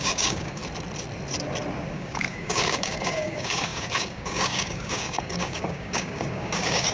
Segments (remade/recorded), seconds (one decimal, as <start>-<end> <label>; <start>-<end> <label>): 0.0-0.6 remade; 0.6-1.9 recorded; 1.9-6.9 remade